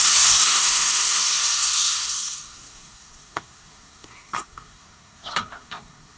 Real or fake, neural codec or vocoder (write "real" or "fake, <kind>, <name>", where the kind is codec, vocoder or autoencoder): fake, codec, SNAC